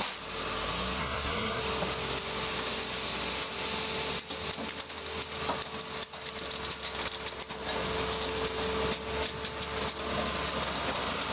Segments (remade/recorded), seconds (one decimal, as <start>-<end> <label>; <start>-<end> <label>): 0.0-1.0 recorded; 1.0-1.6 remade; 1.6-11.3 recorded